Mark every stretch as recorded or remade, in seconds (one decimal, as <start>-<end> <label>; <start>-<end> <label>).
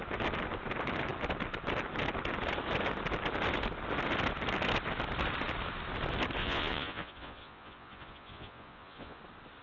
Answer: 0.0-6.4 recorded; 6.4-9.2 remade; 9.2-9.6 recorded